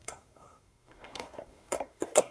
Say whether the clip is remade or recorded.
remade